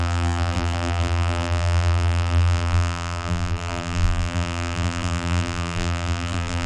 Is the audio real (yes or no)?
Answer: no